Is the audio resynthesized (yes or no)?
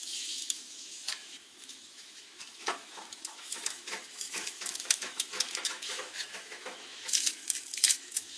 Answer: yes